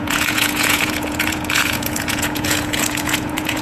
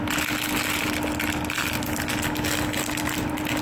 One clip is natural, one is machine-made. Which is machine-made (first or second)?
first